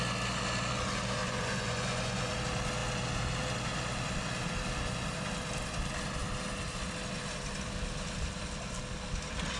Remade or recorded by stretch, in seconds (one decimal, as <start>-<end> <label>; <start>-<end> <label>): 0.0-1.2 recorded; 1.2-2.3 remade; 2.3-9.6 recorded